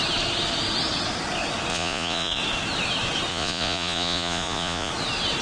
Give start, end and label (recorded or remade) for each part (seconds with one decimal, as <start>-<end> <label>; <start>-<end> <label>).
0.0-1.7 recorded; 1.7-2.4 remade; 2.4-3.3 recorded; 3.3-4.9 remade; 4.9-5.4 recorded